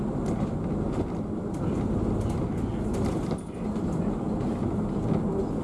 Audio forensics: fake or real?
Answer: real